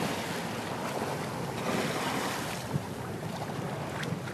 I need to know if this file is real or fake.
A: real